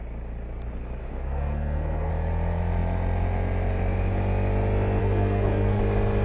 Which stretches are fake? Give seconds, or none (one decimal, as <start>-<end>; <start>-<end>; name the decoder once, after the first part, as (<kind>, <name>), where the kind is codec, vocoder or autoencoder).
1.0-2.1 (codec, SNAC); 5.0-5.8